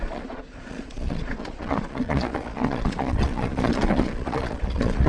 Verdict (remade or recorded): remade